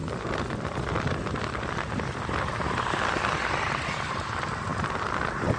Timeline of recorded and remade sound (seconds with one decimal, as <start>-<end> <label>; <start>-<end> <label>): 0.0-5.6 recorded